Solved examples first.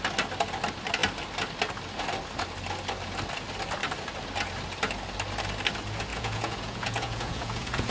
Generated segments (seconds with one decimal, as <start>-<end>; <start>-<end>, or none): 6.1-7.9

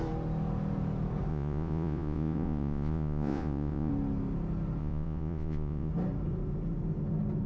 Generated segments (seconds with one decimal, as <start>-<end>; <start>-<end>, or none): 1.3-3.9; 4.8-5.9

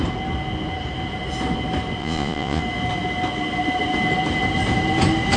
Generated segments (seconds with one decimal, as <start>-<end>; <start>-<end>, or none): 2.0-2.6

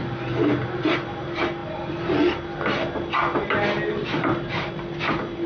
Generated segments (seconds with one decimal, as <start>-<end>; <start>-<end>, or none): none

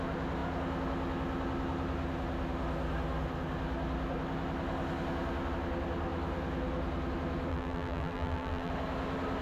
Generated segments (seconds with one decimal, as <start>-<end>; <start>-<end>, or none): 7.5-8.7

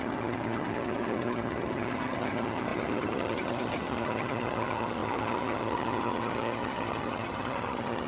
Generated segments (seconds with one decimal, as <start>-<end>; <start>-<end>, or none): 0.0-8.1

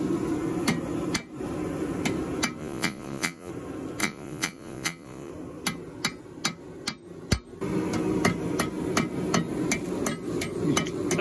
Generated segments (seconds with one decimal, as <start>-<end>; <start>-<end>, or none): 2.6-3.5; 4.0-5.3

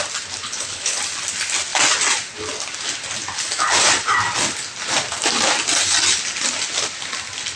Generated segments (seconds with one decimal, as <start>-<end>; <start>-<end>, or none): 0.4-1.0